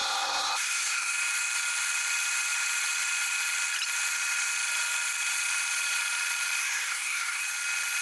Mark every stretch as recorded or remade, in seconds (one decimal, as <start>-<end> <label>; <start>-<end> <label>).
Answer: 0.0-1.1 remade; 1.1-6.6 recorded; 6.6-7.4 remade; 7.4-8.0 recorded